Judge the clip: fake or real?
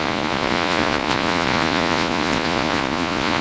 fake